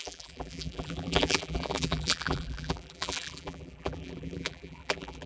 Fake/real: fake